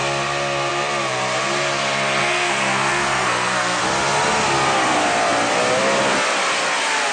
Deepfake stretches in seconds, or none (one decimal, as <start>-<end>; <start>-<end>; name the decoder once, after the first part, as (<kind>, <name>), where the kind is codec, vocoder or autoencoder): 2.2-3.8 (codec, SNAC)